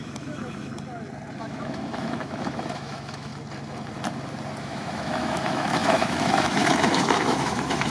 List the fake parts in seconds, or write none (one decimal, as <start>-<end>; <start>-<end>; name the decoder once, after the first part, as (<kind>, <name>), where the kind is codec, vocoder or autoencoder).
0.0-0.7 (autoencoder, DAC-VAE); 1.4-3.3; 4.6-7.9

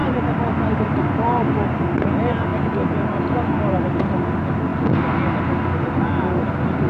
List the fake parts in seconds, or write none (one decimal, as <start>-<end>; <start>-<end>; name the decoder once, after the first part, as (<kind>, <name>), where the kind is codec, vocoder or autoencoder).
none

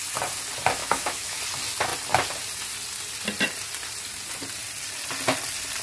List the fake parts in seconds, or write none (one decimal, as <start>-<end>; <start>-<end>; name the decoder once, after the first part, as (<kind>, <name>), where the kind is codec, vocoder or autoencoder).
0.8-1.4 (autoencoder, DAC-VAE)